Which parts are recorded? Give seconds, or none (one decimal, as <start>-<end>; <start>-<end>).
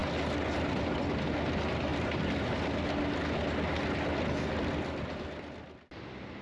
0.0-6.4